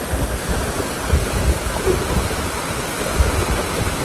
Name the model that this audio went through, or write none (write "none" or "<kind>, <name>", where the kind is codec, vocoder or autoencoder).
none